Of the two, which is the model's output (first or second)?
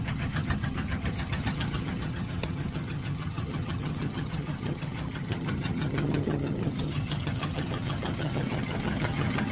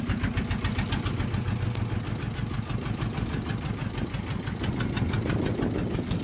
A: first